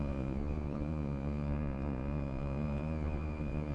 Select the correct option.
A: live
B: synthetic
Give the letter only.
B